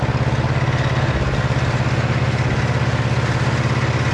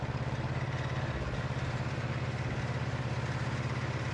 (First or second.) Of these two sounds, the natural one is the first